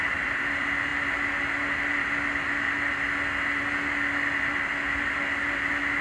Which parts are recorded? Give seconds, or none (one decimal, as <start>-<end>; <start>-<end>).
0.0-6.0

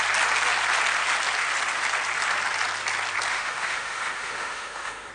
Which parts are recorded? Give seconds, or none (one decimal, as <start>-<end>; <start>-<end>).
0.0-3.3